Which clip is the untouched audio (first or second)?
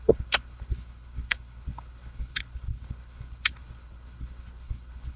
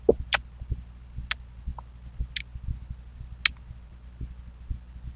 second